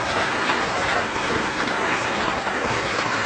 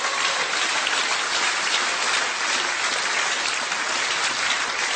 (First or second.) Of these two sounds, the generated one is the first